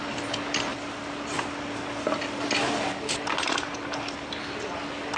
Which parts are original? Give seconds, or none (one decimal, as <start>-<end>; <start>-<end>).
0.0-5.2